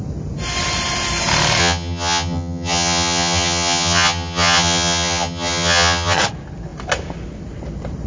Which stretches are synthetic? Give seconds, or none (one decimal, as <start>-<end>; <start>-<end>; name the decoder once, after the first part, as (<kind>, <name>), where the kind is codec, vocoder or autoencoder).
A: 1.6-6.2 (vocoder, HiFi-GAN)